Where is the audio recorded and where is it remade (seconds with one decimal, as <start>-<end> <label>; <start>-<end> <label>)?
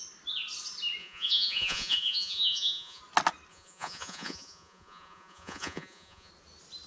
0.0-1.0 recorded; 1.0-3.0 remade; 3.0-3.5 recorded; 3.5-6.3 remade; 6.3-6.9 recorded